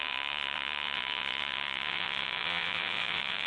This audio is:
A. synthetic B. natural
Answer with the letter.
A